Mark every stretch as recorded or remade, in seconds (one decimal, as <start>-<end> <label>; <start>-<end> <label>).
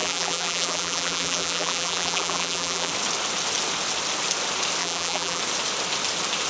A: 0.0-2.9 remade; 2.9-4.8 recorded; 4.8-5.4 remade; 5.4-6.5 recorded